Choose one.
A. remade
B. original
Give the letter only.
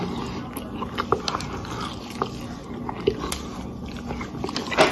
B